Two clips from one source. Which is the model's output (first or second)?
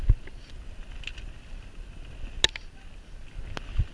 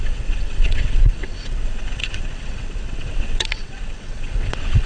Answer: second